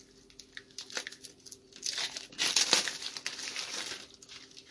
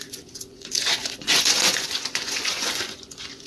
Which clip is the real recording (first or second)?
first